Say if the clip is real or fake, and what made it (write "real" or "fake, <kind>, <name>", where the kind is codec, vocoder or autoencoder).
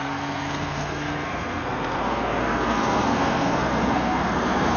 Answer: fake, codec, SNAC